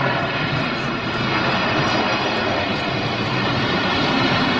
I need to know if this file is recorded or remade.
remade